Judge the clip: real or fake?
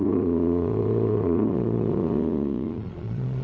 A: fake